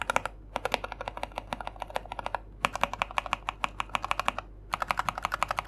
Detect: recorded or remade recorded